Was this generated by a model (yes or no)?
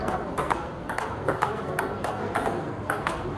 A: yes